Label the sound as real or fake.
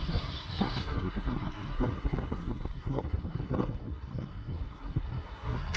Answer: fake